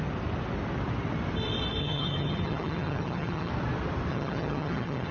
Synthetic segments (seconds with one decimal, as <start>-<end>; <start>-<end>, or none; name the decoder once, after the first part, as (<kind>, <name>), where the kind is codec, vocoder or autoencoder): 1.8-3.5 (vocoder, HiFi-GAN); 4.1-5.1